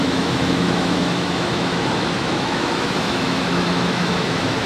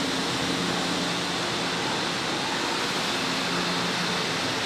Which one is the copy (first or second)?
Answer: first